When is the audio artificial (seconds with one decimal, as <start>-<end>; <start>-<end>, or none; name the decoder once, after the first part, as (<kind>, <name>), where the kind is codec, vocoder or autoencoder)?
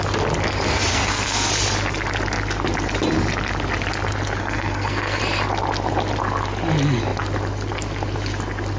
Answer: 0.9-1.5 (codec, SNAC); 4.4-5.2